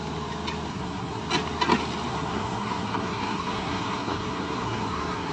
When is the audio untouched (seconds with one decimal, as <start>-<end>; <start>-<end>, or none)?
0.0-0.7; 1.2-2.1